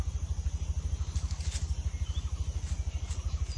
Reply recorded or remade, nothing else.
recorded